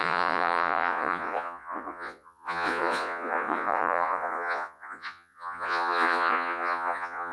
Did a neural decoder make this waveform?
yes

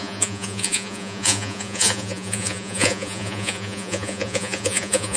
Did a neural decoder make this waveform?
yes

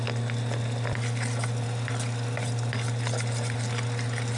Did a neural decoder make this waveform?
no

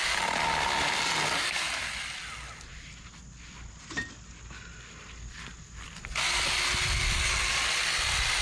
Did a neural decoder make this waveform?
no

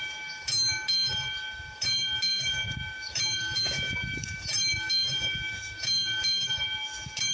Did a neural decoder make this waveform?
yes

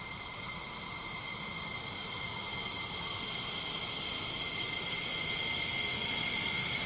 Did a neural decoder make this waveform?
no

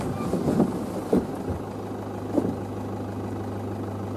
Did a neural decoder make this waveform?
no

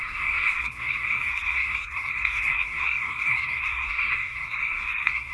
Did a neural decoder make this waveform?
yes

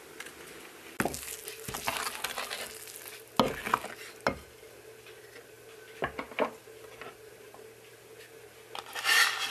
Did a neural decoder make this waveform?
no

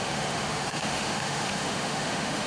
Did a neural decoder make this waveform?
yes